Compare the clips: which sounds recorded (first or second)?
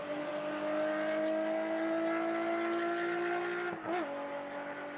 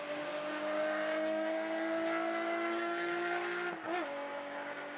first